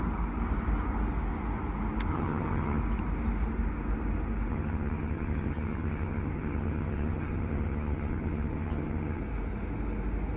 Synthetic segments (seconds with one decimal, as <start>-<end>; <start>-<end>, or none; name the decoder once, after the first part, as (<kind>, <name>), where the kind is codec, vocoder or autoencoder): 2.1-2.8 (vocoder, HiFi-GAN); 4.5-9.2